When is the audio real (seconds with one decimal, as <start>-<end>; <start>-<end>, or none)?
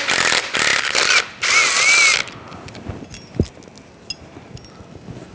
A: 0.0-5.3